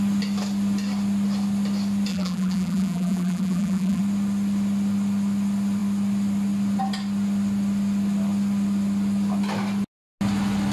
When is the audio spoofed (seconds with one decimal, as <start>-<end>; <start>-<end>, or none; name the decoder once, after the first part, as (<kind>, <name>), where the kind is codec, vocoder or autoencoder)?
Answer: 2.1-4.0 (vocoder, BigVGAN v2)